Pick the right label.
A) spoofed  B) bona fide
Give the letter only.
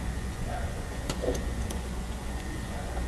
A